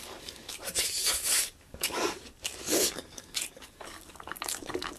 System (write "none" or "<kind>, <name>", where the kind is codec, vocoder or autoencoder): codec, DAC